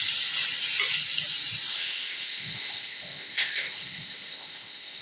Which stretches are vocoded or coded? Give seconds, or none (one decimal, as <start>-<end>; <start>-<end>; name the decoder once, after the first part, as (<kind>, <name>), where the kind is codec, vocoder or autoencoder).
1.7-5.0 (codec, ZipCodec)